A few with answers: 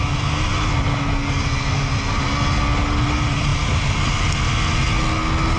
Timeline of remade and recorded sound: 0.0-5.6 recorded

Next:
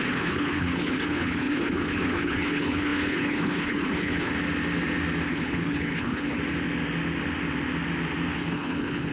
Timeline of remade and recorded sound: 0.0-4.3 remade; 4.3-5.3 recorded; 5.3-6.4 remade; 6.4-8.4 recorded; 8.4-9.1 remade

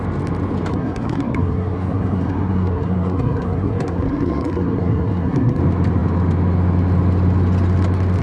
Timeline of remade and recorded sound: 0.0-0.7 recorded; 0.7-5.6 remade; 5.6-8.2 recorded

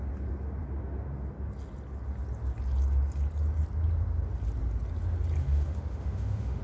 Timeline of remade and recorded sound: 0.0-5.4 recorded; 5.4-6.6 remade